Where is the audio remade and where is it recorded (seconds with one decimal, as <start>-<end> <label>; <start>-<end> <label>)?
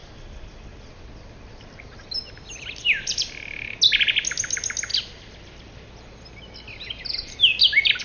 0.0-8.0 recorded